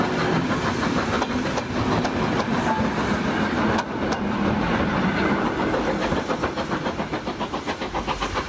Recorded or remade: recorded